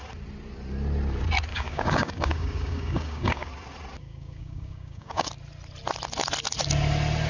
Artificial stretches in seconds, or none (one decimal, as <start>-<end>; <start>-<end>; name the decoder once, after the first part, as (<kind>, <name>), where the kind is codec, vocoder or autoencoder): 1.5-3.5 (codec, DAC); 4.0-5.3